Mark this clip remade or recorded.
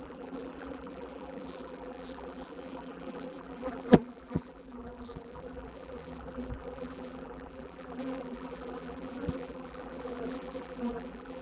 remade